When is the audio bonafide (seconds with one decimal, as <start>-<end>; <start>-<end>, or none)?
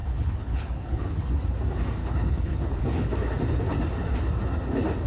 1.3-2.0; 3.1-5.1